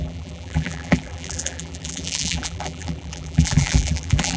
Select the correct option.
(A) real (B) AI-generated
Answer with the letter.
B